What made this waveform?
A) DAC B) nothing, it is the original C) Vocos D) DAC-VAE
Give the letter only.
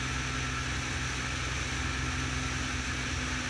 B